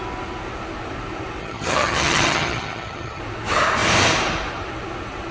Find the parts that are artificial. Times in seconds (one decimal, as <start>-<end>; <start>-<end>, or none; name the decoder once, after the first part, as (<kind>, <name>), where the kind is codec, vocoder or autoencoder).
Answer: 1.4-3.2 (vocoder, HiFi-GAN)